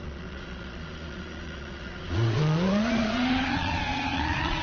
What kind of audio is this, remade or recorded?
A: remade